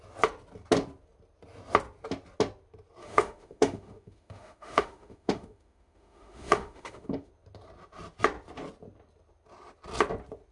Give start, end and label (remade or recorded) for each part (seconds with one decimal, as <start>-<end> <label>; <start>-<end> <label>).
0.0-3.0 recorded; 3.0-7.3 remade; 7.3-10.5 recorded